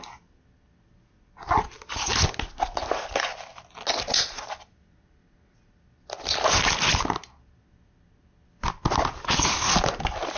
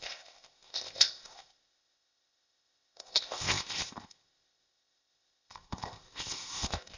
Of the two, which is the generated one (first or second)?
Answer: second